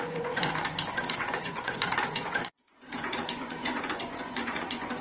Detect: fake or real fake